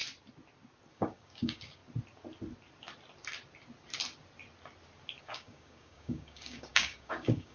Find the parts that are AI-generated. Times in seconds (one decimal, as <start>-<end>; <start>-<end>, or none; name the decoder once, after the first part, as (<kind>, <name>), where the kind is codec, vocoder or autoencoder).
0.9-1.8 (codec, DAC); 5.2-7.5